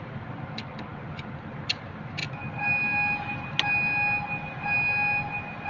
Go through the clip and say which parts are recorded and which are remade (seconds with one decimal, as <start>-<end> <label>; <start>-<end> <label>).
0.0-5.7 recorded